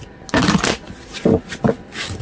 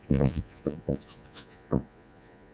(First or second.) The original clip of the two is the first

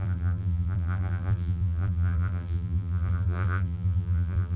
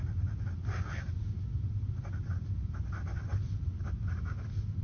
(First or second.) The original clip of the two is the second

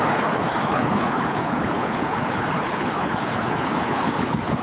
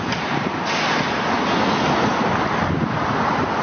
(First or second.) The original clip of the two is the second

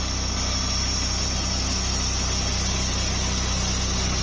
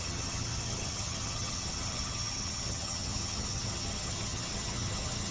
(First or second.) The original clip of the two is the first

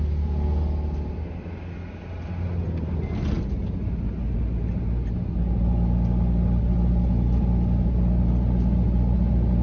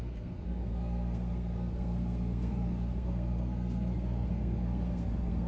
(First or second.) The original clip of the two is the first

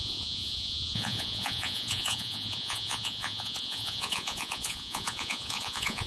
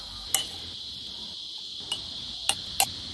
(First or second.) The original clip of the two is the second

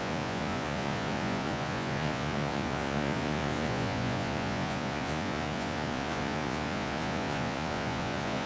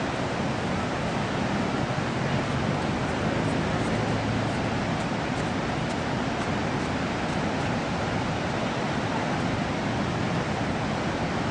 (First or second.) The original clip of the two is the second